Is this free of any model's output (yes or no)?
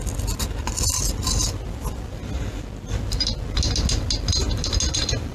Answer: yes